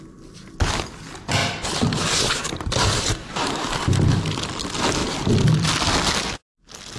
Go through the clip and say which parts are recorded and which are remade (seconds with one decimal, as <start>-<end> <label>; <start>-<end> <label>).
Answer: 0.0-1.4 recorded; 1.4-4.2 remade; 4.2-5.0 recorded; 5.0-5.8 remade; 5.8-7.0 recorded